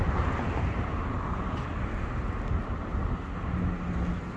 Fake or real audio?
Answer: real